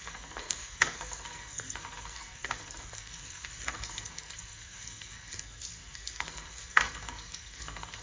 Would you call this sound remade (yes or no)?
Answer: yes